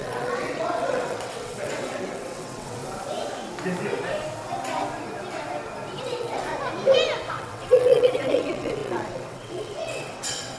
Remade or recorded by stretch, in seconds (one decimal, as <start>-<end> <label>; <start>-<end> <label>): 0.0-2.8 remade; 2.8-6.0 recorded; 6.0-6.5 remade; 6.5-7.3 recorded; 7.3-10.6 remade